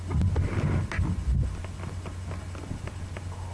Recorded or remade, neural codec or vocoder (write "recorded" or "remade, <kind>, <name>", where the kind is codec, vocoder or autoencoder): recorded